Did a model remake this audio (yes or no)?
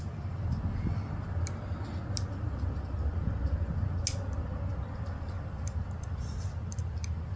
no